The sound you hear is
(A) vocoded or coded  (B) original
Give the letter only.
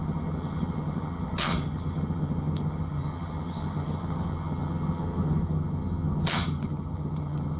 A